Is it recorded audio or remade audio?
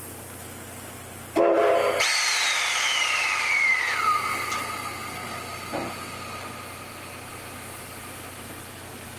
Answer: recorded